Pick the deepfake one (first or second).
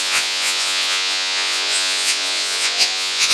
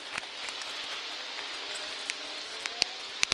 first